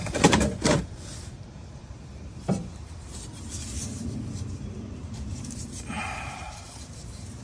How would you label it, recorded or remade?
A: remade